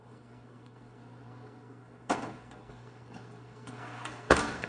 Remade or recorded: remade